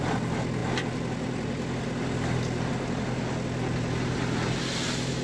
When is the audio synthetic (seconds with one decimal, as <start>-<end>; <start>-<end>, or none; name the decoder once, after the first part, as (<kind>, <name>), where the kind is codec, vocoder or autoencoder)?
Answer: none

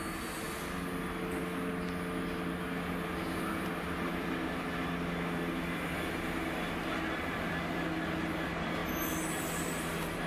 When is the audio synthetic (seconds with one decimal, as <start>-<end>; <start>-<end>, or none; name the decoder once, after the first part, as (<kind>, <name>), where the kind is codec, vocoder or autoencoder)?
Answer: none

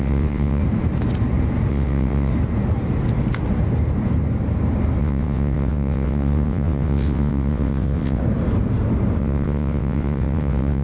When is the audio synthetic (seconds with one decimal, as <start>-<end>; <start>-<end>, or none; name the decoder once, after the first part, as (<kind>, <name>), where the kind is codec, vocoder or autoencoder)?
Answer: 0.0-0.6 (vocoder, WaveNeXt); 1.7-2.3; 5.0-8.2; 9.2-10.8

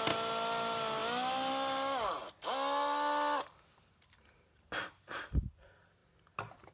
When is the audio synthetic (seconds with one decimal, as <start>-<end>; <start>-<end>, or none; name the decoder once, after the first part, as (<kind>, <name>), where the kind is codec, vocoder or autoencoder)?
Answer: none

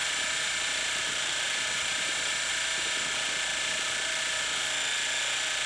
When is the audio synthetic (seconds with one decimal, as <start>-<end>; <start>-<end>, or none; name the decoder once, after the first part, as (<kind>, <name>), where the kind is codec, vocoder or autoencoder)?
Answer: 0.0-2.5 (vocoder, BigVGAN v2); 3.5-4.2

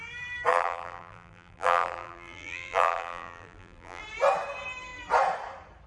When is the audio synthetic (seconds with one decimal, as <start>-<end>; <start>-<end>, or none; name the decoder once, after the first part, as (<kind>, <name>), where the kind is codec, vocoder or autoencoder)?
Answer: 0.5-4.0 (vocoder, BigVGAN v2)

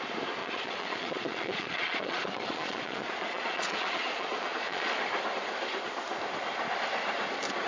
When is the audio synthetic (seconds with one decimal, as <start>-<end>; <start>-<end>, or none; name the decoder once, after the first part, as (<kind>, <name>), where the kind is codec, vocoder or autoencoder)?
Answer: 0.4-5.0 (vocoder, Vocos)

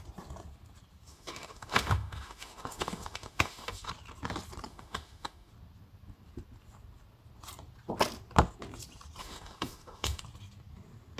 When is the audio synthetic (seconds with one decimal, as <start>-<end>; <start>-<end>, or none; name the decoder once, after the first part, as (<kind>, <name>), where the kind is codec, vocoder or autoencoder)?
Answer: 1.1-3.9 (autoencoder, DAC-VAE); 4.7-5.5; 9.2-10.2